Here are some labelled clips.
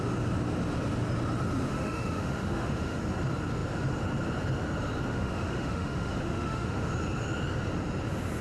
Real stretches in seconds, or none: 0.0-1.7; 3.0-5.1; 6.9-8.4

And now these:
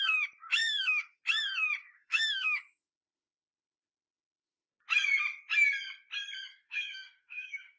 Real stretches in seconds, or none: 0.0-0.6; 1.2-1.8; 4.7-6.5

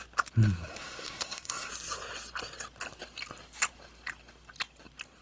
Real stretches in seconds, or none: 0.0-0.7; 1.7-5.2

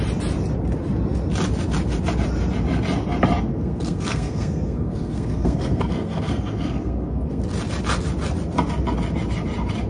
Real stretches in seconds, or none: 0.0-3.5; 7.4-9.9

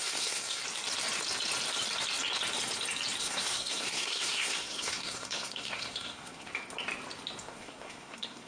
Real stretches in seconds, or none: 0.6-3.2; 6.5-7.4

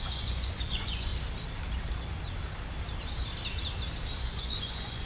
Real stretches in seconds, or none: 1.1-4.2